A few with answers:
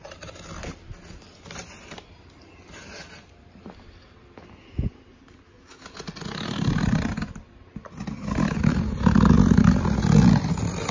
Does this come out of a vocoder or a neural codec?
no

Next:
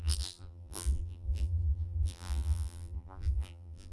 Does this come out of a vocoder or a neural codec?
yes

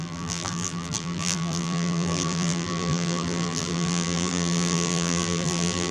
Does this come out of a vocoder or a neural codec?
yes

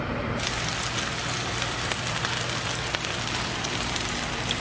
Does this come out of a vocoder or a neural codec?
yes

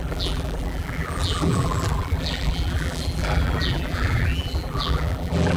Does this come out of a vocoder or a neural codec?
yes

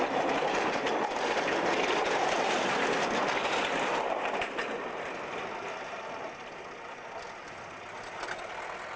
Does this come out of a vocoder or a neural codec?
no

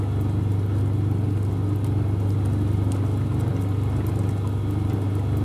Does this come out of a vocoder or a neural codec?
no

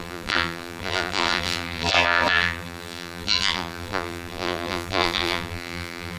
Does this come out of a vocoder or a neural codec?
yes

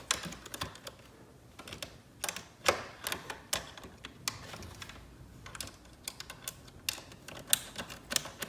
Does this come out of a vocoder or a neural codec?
no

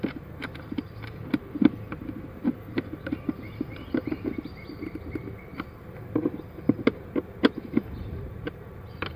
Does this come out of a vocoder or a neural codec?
yes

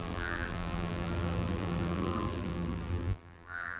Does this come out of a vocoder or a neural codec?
yes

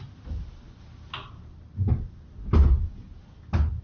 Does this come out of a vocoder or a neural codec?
no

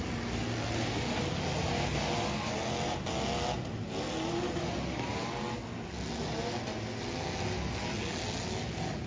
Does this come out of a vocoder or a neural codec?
no